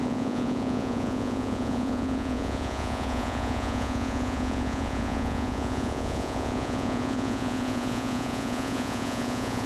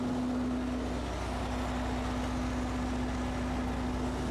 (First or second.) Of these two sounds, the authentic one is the second